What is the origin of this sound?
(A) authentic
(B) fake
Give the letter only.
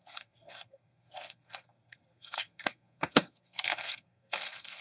B